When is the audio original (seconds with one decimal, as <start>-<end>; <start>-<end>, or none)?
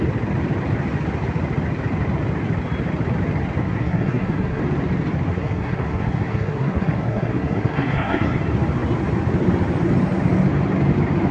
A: 0.0-3.6; 4.6-5.3; 8.4-11.3